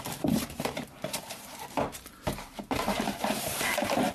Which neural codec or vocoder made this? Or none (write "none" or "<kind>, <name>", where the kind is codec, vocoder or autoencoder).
vocoder, BigVGAN v2